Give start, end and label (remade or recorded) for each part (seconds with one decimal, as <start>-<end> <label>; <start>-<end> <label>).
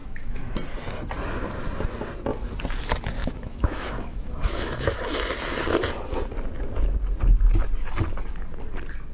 0.0-0.5 remade; 0.5-3.2 recorded; 3.2-5.0 remade; 5.0-9.1 recorded